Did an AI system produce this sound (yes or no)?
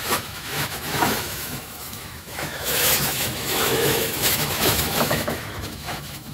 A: yes